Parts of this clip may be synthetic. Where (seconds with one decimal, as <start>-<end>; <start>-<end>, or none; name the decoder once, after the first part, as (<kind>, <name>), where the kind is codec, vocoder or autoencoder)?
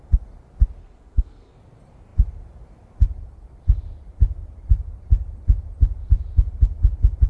0.8-1.6 (codec, SNAC)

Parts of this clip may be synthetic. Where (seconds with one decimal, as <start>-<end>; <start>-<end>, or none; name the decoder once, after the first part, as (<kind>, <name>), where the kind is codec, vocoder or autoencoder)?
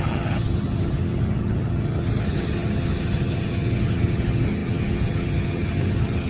0.0-6.3 (vocoder, HiFi-GAN)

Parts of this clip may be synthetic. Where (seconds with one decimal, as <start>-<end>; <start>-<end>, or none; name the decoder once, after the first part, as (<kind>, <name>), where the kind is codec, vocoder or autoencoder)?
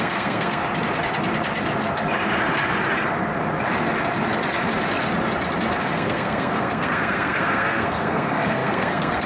0.0-0.6 (codec, SNAC); 5.8-9.3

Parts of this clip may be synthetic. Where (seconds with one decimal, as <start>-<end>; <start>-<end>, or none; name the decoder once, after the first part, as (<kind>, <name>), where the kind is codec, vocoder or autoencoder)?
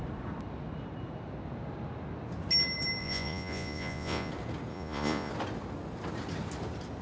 3.0-4.3 (vocoder, Vocos); 4.7-5.3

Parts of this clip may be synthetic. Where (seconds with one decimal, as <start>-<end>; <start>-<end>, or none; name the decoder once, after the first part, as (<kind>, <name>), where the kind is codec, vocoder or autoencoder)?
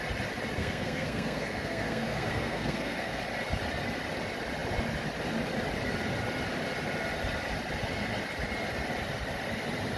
0.6-3.2 (codec, SNAC)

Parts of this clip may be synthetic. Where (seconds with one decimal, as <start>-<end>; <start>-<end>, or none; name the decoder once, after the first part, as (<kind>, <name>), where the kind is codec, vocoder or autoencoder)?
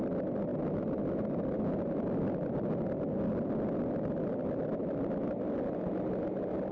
none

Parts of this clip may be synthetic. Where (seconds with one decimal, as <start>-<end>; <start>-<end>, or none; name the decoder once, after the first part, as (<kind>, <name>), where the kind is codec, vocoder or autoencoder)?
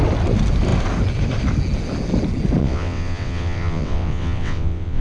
2.6-5.0 (vocoder, WaveNeXt)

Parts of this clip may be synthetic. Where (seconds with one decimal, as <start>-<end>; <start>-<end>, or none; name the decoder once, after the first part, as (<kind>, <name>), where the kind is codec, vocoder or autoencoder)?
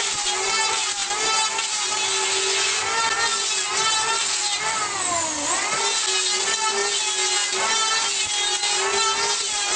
none